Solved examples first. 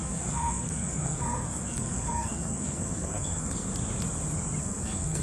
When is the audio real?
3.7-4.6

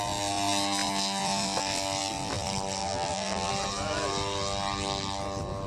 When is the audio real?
0.0-2.8; 3.5-5.7

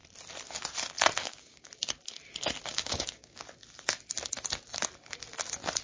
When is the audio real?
0.0-1.2; 1.7-2.7; 3.4-5.8